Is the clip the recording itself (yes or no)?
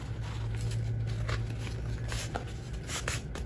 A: yes